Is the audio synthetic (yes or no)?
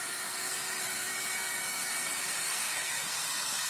yes